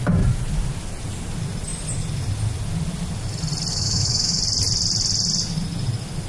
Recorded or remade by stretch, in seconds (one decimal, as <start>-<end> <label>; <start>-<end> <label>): 0.0-3.7 recorded; 3.7-4.4 remade; 4.4-6.3 recorded